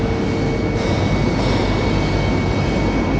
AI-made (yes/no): no